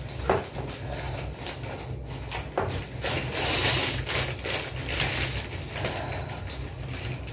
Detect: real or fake real